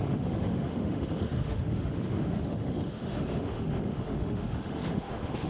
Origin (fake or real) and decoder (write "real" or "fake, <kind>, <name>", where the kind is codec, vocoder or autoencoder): fake, autoencoder, DAC-VAE